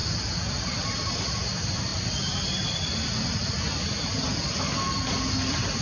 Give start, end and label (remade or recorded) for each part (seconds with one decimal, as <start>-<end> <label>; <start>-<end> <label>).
0.0-5.8 recorded